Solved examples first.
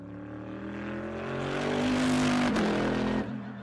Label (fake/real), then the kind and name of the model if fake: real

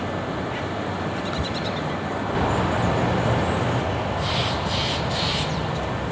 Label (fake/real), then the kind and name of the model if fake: fake, vocoder, BigVGAN v2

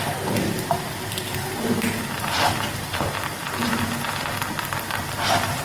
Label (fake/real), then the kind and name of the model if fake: real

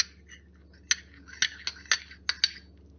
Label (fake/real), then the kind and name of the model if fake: real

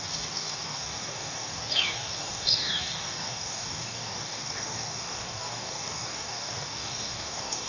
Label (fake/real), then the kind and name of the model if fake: fake, codec, DAC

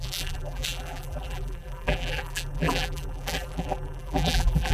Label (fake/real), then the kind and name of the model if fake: fake, vocoder, BigVGAN v2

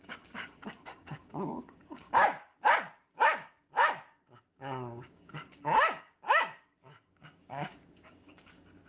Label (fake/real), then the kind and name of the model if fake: fake, codec, DAC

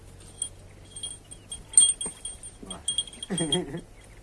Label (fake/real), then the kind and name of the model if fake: real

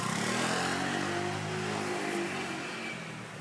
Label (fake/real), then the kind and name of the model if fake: real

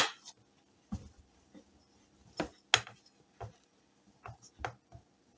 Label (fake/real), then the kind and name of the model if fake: real